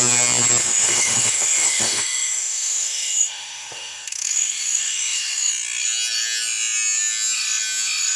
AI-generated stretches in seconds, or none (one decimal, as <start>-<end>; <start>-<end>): 0.6-5.5

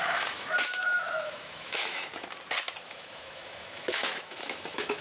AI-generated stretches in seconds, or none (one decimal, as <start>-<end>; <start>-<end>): 0.0-2.1; 2.8-5.0

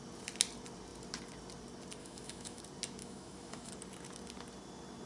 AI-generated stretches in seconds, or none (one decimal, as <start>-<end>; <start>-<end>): 2.0-2.6; 3.0-3.7